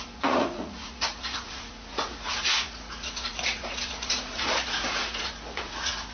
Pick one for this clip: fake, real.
fake